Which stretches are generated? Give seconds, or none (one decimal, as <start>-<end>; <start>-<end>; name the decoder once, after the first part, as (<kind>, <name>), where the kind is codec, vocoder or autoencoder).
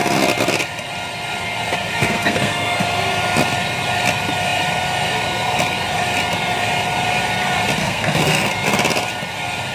1.9-2.8 (codec, SNAC); 7.8-8.5